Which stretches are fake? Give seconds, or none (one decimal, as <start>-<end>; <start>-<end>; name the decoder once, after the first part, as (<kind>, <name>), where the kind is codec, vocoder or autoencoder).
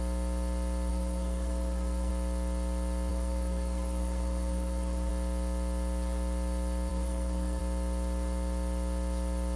0.9-2.1 (codec, SNAC); 3.1-5.1; 6.9-7.6